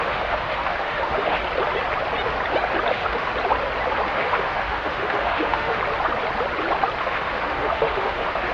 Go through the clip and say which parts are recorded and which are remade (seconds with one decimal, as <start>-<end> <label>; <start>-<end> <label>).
0.0-1.4 remade; 1.4-2.9 recorded; 2.9-3.3 remade; 3.3-4.1 recorded; 4.1-5.8 remade; 5.8-7.0 recorded; 7.0-8.5 remade